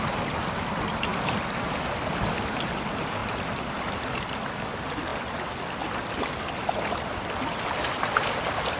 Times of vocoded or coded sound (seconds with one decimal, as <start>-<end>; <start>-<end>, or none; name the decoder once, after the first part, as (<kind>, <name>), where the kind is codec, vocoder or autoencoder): none